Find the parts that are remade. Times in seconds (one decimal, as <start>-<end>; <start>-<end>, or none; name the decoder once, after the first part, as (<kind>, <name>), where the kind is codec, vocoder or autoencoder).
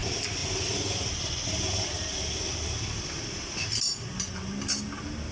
0.0-3.7 (vocoder, BigVGAN v2)